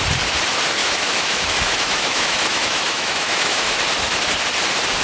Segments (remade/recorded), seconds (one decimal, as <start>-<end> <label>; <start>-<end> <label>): 0.0-0.8 recorded; 0.8-3.8 remade; 3.8-5.0 recorded